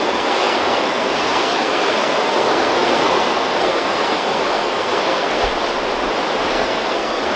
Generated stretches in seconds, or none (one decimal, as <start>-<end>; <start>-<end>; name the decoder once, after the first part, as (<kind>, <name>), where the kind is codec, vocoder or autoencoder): 0.0-5.5 (codec, SNAC); 6.5-7.4